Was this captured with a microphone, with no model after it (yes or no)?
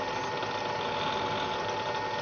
yes